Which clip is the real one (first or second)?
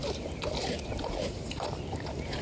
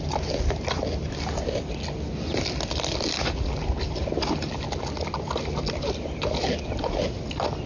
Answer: second